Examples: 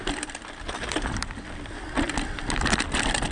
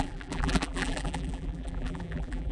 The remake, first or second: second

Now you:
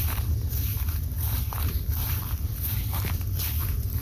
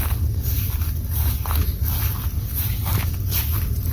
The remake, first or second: first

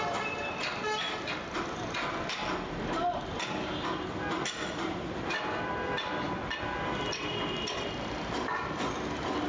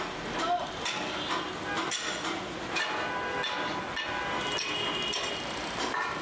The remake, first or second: first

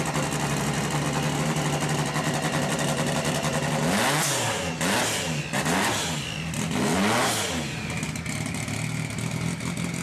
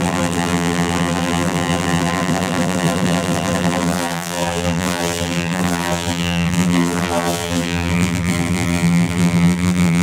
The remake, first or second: second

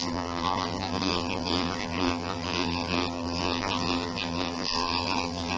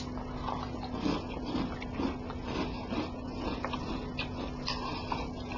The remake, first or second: first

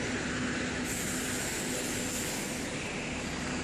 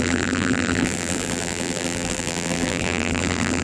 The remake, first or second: second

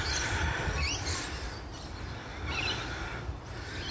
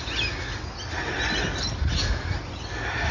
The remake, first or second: first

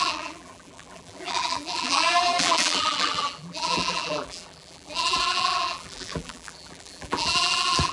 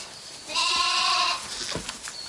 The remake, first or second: first